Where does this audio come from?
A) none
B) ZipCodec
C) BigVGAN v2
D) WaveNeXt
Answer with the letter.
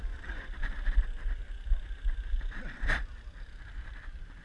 C